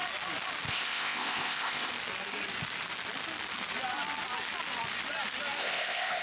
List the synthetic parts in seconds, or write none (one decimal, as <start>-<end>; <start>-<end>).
0.7-1.9; 5.6-6.2